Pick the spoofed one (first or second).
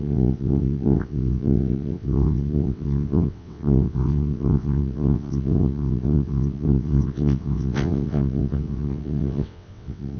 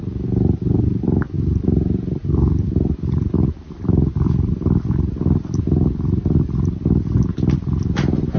first